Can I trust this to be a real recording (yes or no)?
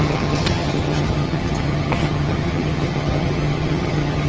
no